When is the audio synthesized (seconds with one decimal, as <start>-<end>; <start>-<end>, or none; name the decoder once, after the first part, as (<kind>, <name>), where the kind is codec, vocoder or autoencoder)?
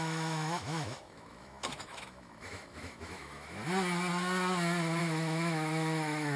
0.0-3.6 (autoencoder, DAC-VAE); 5.0-6.4